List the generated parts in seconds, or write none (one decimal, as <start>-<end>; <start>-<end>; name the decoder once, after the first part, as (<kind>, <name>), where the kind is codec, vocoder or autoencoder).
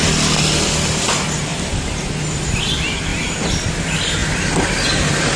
none